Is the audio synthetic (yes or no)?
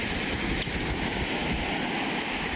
no